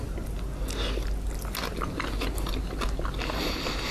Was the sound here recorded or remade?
recorded